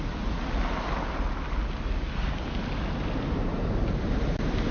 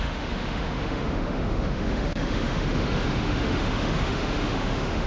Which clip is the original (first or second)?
first